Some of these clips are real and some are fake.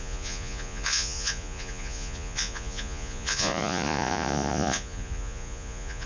fake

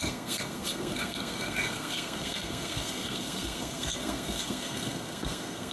fake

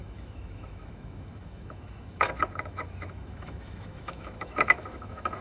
fake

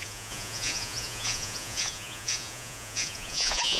fake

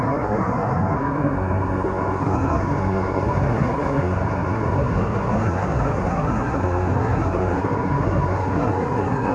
fake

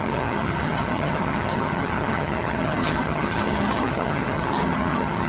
fake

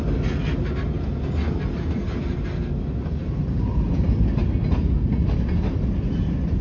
real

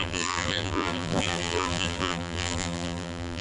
fake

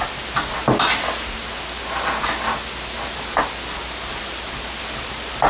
real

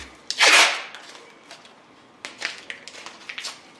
real